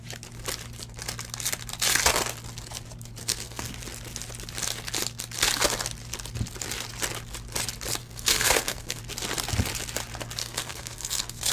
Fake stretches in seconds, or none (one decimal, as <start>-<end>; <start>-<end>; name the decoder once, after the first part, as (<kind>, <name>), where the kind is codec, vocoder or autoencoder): 3.2-3.7 (codec, SNAC); 8.0-9.0; 10.4-11.5